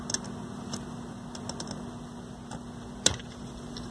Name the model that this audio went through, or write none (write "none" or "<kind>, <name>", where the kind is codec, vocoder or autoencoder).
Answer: none